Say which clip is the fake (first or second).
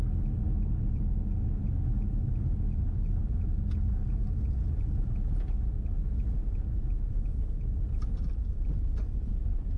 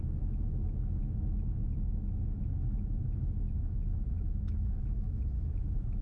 second